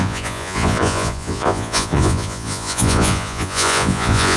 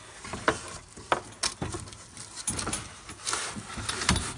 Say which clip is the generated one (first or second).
first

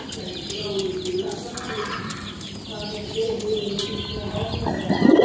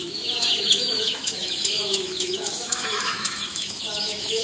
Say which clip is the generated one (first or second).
second